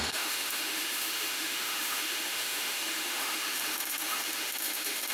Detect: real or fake fake